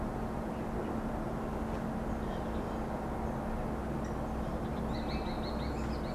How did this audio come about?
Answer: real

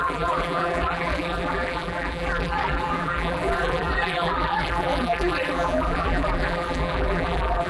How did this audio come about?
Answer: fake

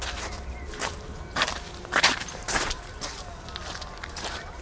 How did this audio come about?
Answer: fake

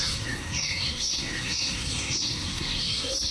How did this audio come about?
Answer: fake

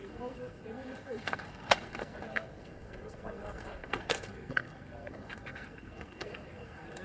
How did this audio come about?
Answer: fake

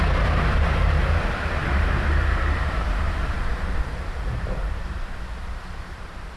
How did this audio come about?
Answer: fake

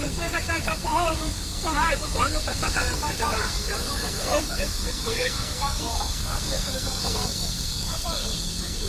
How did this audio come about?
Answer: fake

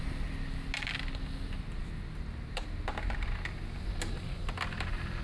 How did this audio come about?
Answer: real